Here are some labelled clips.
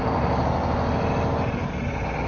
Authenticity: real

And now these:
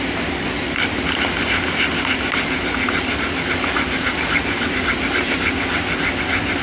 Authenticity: real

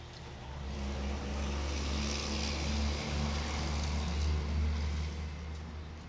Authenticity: real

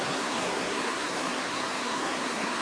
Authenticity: fake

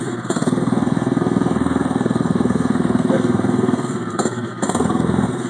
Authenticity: fake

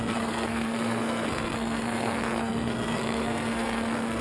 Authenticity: fake